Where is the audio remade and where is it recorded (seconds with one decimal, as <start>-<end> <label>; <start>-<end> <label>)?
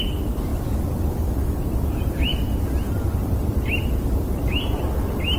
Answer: 0.0-5.4 recorded